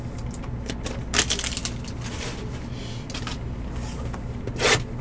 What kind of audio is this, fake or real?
real